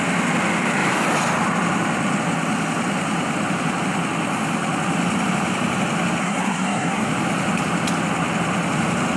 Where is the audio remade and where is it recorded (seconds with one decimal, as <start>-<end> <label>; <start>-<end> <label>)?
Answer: 0.0-6.2 recorded; 6.2-7.1 remade; 7.1-9.2 recorded